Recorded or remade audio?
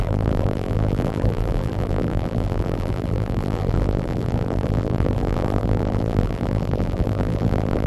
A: remade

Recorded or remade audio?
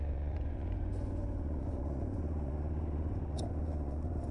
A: remade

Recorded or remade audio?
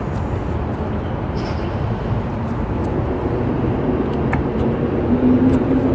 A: recorded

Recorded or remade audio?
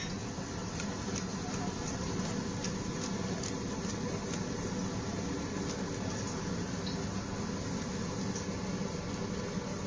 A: recorded